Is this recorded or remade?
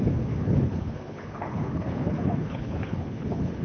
remade